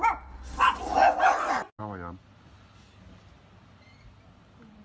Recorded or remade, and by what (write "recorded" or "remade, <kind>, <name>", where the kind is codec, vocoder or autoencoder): recorded